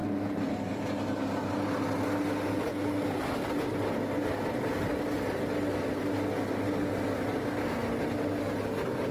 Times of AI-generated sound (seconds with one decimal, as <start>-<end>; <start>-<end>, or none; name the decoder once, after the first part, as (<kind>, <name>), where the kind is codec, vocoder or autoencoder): none